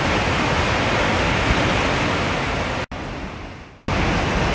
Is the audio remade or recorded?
recorded